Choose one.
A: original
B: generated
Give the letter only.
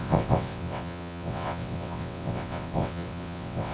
B